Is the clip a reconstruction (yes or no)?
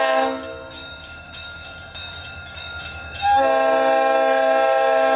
yes